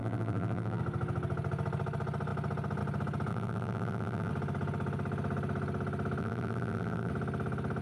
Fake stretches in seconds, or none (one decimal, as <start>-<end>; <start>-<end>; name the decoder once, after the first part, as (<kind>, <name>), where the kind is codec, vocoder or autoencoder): 0.0-0.8 (vocoder, BigVGAN v2); 3.3-4.3; 6.2-7.1